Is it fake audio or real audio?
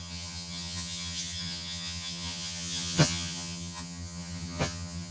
fake